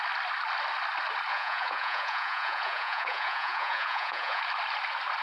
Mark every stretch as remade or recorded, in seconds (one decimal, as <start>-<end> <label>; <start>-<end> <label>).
0.0-1.3 recorded; 1.3-4.4 remade; 4.4-5.2 recorded